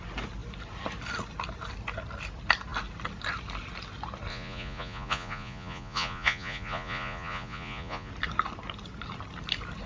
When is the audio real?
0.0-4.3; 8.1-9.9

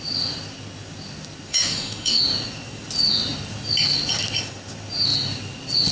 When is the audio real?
0.0-1.5; 2.2-5.9

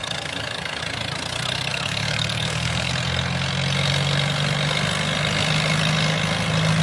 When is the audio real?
0.8-1.7; 2.9-6.8